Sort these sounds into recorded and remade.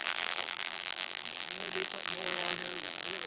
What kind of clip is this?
remade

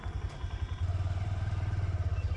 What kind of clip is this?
remade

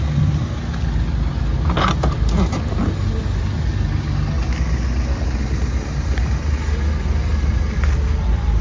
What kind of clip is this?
recorded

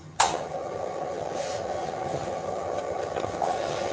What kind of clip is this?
remade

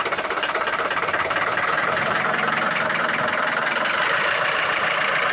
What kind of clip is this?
remade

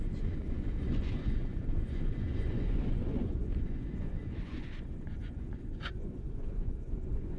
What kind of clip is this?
remade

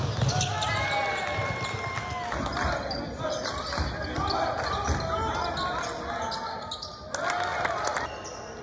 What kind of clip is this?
recorded